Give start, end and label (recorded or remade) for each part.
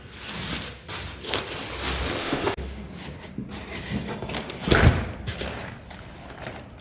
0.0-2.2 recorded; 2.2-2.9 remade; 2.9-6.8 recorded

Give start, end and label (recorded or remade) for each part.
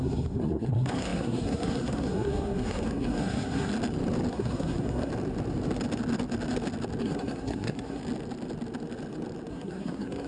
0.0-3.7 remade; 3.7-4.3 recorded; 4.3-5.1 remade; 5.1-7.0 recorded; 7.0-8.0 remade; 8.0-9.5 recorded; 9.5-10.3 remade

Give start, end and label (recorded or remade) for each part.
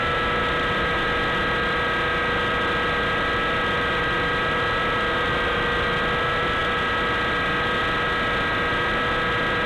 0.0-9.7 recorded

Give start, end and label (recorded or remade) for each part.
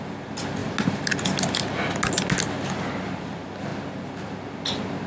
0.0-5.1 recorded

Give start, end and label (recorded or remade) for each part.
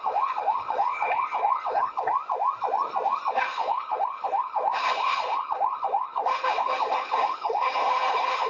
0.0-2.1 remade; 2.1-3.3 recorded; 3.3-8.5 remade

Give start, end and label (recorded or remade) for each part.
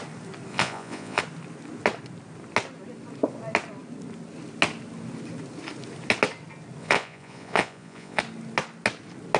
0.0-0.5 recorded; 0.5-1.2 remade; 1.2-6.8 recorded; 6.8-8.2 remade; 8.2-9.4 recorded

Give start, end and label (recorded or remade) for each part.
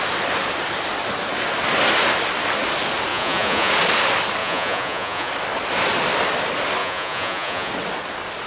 0.0-3.1 recorded; 3.1-3.7 remade; 3.7-4.4 recorded; 4.4-5.3 remade; 5.3-6.8 recorded; 6.8-7.7 remade; 7.7-8.5 recorded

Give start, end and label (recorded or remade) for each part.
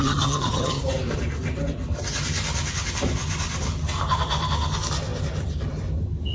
0.0-0.8 remade; 0.8-6.3 recorded